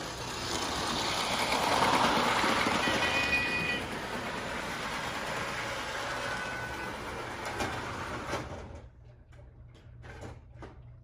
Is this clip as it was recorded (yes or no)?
yes